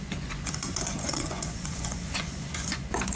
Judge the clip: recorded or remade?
remade